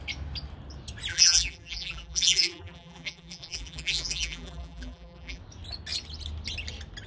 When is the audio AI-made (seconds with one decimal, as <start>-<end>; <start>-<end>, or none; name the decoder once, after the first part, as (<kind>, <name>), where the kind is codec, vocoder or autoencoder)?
1.1-5.4 (vocoder, BigVGAN v2)

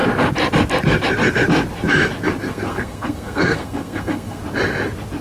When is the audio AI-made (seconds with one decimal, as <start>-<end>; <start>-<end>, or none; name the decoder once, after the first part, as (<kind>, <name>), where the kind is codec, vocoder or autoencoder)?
2.4-4.4 (codec, SNAC)

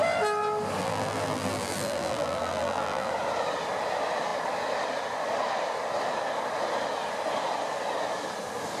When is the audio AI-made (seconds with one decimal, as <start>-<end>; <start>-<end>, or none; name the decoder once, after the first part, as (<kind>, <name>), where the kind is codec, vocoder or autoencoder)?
0.8-3.1 (vocoder, BigVGAN v2)

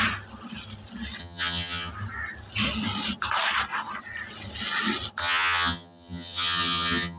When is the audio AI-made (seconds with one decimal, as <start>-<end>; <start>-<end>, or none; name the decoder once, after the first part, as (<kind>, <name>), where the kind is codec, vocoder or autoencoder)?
1.2-1.9 (vocoder, HiFi-GAN); 5.2-7.2

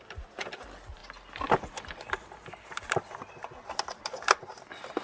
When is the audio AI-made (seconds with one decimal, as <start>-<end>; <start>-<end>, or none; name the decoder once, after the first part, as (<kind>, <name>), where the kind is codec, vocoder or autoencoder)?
none

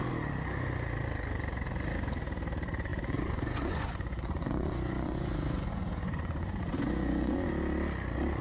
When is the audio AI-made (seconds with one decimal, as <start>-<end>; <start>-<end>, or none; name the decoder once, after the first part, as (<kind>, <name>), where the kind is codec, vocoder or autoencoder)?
2.9-7.5 (vocoder, Vocos)